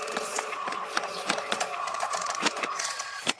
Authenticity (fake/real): fake